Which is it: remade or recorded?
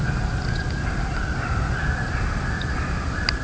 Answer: recorded